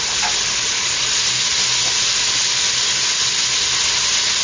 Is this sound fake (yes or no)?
no